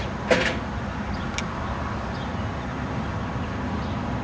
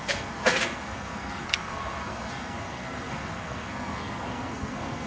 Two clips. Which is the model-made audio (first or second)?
second